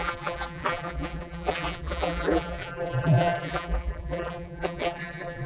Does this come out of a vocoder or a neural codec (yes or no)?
yes